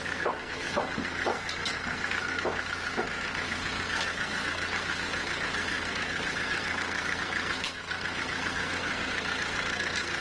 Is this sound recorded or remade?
remade